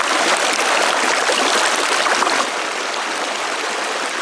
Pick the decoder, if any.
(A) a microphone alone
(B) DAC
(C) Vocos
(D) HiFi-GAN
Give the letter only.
A